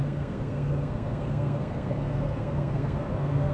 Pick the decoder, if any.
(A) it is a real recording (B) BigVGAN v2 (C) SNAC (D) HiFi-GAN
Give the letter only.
C